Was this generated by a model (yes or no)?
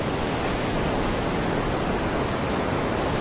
no